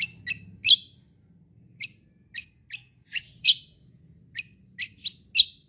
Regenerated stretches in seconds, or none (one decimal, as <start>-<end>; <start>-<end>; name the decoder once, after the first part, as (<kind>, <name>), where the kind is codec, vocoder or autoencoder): 2.8-4.0 (vocoder, Vocos)